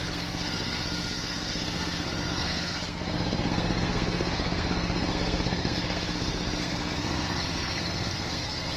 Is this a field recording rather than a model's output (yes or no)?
no